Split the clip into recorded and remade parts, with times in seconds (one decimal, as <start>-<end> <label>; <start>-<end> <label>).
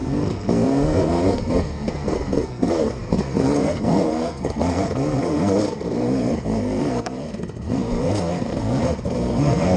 0.0-9.8 remade